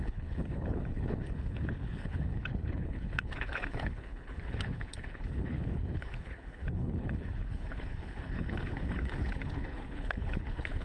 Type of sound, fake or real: fake